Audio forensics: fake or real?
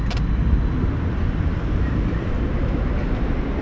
real